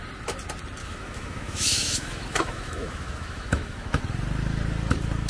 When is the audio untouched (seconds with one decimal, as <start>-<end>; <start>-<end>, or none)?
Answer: 0.0-0.8; 4.0-5.3